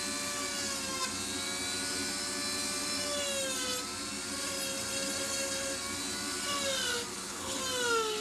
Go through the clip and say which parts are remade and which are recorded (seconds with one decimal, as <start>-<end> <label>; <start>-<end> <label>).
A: 0.0-7.1 recorded; 7.1-7.6 remade; 7.6-8.2 recorded